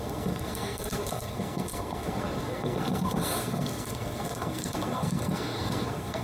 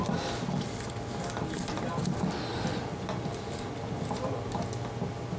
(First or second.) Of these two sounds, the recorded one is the second